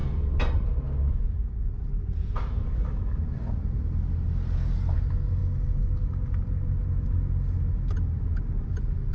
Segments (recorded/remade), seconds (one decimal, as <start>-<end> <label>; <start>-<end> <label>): 0.0-9.1 recorded